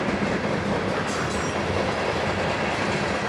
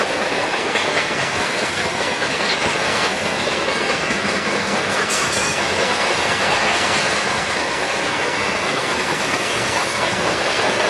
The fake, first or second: second